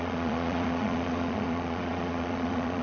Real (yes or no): no